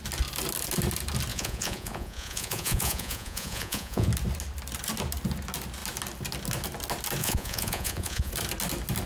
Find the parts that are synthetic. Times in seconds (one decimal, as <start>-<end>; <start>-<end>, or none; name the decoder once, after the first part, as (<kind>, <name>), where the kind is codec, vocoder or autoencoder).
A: 1.3-4.1 (vocoder, Vocos); 7.2-8.3